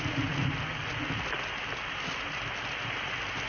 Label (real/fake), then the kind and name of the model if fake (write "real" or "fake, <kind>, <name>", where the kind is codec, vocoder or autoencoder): real